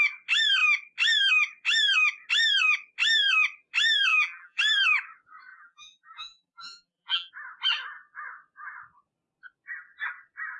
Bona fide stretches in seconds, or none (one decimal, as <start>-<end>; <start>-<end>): 0.0-4.1; 4.6-5.5; 7.3-10.6